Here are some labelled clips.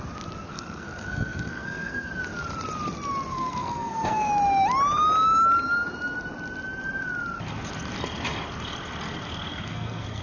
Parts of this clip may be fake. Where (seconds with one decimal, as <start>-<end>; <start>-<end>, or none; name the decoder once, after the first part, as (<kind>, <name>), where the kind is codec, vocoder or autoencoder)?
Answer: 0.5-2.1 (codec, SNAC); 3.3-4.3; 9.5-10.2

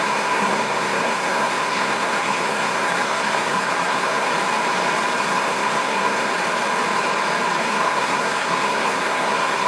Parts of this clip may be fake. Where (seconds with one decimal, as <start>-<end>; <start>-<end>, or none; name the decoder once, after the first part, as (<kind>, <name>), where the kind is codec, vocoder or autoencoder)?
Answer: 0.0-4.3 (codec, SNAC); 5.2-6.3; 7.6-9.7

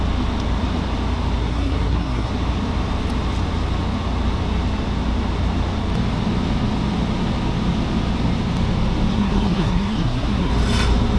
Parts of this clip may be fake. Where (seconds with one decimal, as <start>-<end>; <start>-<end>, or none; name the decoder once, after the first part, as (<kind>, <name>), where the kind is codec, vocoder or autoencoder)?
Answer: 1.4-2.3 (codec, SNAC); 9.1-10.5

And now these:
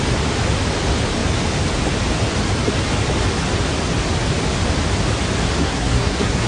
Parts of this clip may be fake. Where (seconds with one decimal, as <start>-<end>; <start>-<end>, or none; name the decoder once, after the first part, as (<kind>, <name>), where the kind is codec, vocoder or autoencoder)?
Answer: 5.6-6.5 (codec, SNAC)

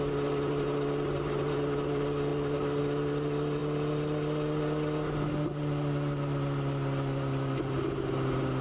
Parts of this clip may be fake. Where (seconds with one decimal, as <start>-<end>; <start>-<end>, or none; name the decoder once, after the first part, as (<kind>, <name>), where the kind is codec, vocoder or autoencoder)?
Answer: none

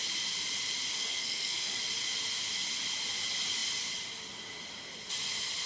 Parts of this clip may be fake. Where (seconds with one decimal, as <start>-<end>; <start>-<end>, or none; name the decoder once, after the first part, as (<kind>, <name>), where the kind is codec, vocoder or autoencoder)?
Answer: 1.0-1.8 (codec, SNAC)

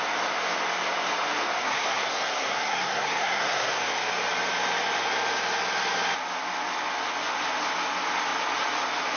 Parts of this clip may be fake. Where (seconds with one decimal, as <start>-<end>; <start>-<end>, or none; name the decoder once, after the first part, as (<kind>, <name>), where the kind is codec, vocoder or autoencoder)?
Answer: 1.6-3.8 (codec, SNAC)